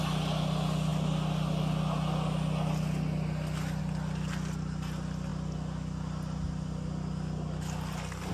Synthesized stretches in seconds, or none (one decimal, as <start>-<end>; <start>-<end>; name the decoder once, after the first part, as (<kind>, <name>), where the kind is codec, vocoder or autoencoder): none